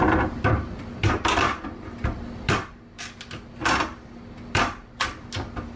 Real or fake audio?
real